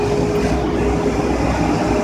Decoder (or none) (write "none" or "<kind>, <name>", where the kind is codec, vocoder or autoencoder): none